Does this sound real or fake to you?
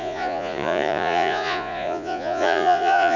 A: fake